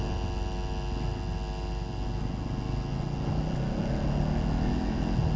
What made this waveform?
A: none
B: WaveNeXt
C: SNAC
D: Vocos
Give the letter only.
A